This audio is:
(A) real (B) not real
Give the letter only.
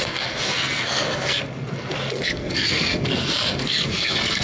B